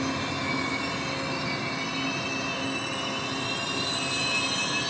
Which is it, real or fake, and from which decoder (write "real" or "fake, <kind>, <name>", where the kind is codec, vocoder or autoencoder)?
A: real